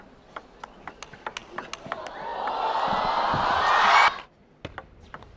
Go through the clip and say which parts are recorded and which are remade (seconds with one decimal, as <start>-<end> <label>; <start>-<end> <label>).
0.0-5.4 recorded